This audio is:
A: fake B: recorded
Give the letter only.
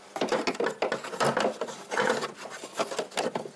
B